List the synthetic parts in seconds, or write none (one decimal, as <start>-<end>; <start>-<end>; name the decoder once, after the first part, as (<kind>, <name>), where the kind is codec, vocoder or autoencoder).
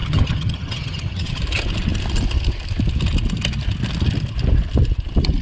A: 0.0-1.4 (vocoder, HiFi-GAN)